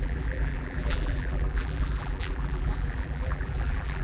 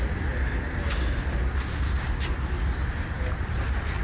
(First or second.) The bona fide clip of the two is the second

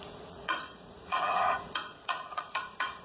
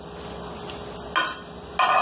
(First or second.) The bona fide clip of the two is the second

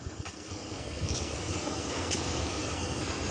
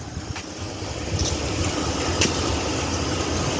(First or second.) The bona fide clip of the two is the second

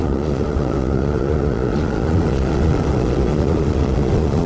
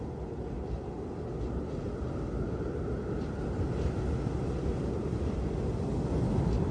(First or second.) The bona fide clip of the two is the second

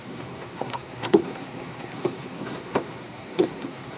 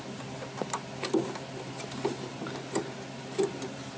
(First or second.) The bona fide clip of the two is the second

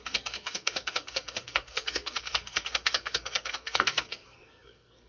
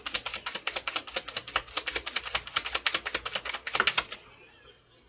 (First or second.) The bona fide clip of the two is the second